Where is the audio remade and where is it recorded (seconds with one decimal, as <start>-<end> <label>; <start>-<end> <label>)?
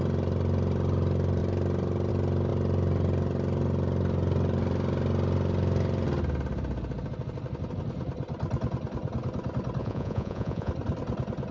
0.0-9.8 recorded; 9.8-10.7 remade; 10.7-11.5 recorded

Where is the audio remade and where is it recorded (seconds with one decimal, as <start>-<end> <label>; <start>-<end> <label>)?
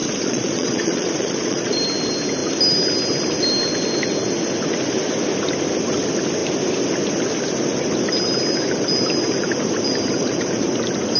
0.0-1.8 remade; 1.8-11.2 recorded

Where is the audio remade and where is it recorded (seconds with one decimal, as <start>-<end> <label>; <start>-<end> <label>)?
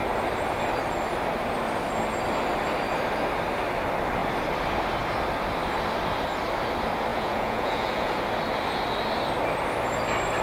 0.0-7.1 recorded; 7.1-8.2 remade; 8.2-10.4 recorded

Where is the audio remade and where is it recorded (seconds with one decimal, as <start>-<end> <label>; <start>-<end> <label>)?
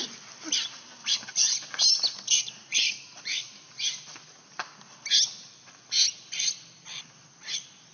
0.0-2.6 recorded; 2.6-3.7 remade; 3.7-7.9 recorded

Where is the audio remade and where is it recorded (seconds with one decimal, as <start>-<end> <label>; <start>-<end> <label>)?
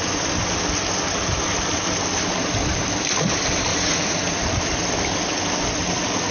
0.0-3.7 recorded; 3.7-4.4 remade; 4.4-6.3 recorded